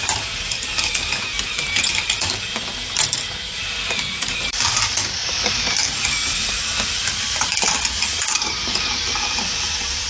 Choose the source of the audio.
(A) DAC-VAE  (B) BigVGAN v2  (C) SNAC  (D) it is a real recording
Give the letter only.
B